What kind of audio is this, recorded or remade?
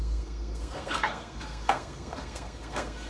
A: remade